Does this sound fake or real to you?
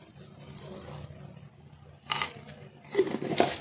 real